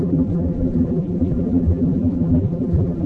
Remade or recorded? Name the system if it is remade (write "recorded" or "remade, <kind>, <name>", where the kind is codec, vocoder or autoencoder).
remade, vocoder, BigVGAN v2